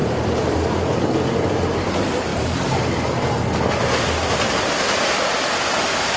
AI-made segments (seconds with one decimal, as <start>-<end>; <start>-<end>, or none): 0.0-0.9

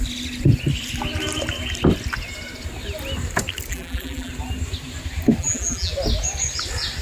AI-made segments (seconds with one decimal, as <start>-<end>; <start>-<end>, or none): 3.7-4.3; 5.4-5.9